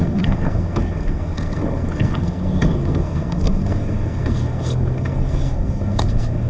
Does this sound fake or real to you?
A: fake